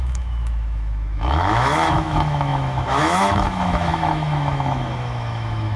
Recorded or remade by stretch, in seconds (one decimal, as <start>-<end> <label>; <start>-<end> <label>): 0.0-5.8 remade